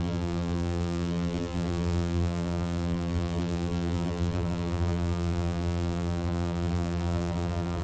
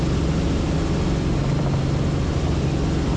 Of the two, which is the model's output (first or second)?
first